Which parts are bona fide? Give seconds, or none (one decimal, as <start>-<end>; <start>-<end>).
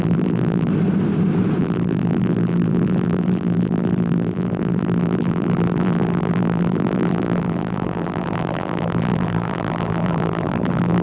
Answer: 0.7-1.6